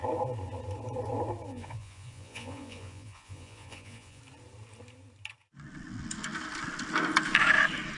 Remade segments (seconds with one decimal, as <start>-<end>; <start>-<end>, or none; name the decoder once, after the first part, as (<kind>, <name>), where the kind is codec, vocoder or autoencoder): 1.5-4.2 (vocoder, Vocos)